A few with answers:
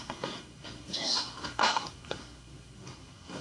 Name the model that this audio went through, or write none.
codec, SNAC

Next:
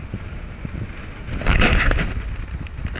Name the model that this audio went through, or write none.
none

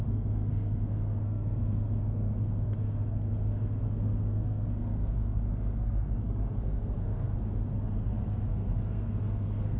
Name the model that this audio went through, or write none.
codec, SNAC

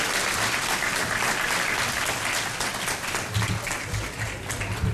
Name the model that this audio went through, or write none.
none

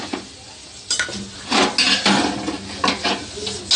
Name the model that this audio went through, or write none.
none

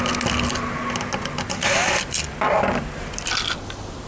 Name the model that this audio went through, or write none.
none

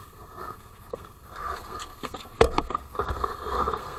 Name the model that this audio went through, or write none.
codec, SNAC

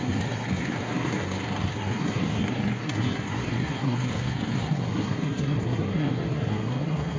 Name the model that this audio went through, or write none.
codec, SNAC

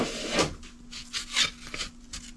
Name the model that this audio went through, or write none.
none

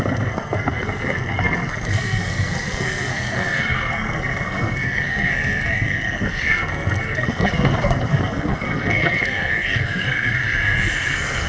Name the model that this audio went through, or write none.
codec, SNAC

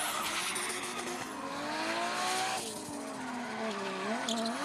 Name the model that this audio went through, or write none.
none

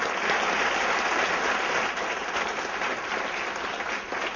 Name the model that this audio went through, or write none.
none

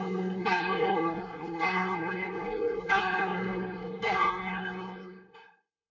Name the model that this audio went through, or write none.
codec, SNAC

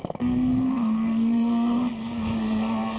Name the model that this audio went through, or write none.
codec, SNAC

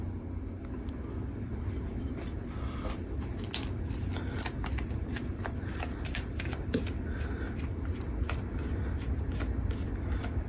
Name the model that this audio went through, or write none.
none